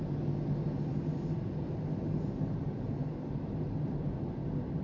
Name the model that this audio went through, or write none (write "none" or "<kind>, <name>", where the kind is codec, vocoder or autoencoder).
none